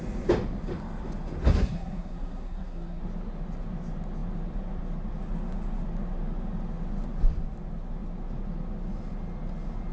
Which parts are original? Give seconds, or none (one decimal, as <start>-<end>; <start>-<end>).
0.0-1.5; 3.0-9.9